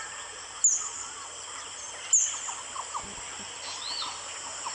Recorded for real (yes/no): yes